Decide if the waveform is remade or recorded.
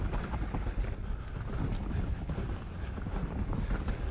recorded